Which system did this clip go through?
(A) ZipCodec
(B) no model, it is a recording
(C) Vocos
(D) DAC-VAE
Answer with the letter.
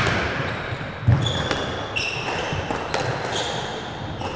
B